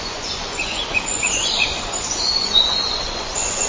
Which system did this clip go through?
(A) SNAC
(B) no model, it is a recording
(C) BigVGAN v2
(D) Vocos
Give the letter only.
D